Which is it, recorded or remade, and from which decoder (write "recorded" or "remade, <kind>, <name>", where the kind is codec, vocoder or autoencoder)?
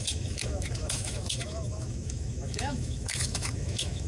remade, autoencoder, DAC-VAE